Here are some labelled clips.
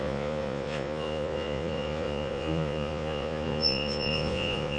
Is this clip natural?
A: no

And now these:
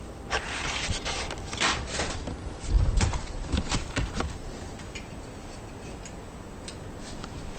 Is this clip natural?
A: yes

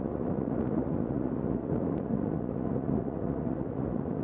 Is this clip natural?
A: no